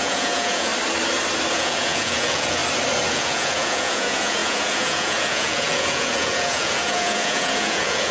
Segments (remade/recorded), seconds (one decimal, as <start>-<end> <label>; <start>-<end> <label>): 0.0-0.7 remade; 0.7-1.5 recorded; 1.5-2.6 remade; 2.6-3.1 recorded; 3.1-8.1 remade